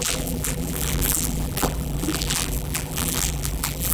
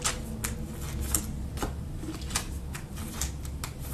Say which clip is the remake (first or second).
first